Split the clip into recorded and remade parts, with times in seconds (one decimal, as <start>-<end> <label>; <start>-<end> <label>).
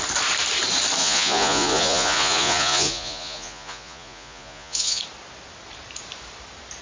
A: 0.0-1.0 recorded; 1.0-5.0 remade; 5.0-6.8 recorded